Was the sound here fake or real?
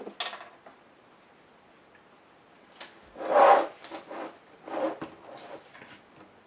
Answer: real